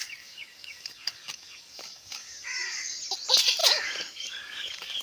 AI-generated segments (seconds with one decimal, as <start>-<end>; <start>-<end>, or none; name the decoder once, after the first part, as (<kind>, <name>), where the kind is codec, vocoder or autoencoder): 0.0-3.0 (codec, DAC); 3.6-5.0